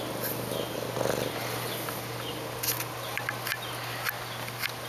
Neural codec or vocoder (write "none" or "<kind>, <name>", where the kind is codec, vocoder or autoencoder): none